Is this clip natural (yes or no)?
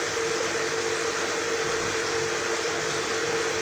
yes